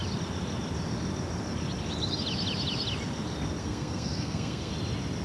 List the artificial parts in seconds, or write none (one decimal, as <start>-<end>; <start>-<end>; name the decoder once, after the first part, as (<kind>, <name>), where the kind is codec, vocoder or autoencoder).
3.6-4.7 (codec, SNAC)